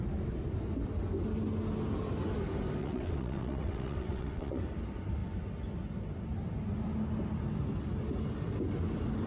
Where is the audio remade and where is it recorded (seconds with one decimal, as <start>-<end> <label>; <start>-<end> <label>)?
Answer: 0.0-2.8 recorded; 2.8-4.6 remade; 4.6-9.3 recorded